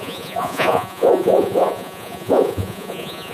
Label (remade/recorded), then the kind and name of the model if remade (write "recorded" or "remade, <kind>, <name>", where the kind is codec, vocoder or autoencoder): remade, vocoder, Vocos